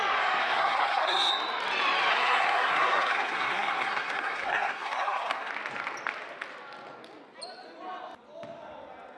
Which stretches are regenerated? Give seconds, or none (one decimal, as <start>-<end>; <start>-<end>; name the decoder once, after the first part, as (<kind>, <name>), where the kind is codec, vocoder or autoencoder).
0.4-1.3 (codec, SNAC); 2.1-5.5